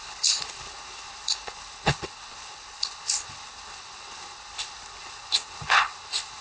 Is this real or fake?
fake